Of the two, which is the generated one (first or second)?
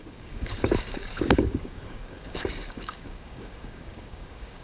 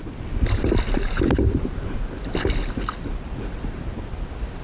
first